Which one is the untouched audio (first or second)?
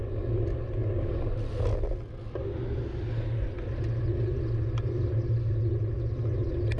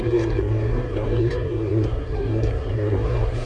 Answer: first